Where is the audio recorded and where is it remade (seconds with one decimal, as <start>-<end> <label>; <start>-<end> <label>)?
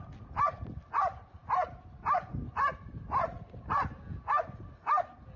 0.0-5.4 recorded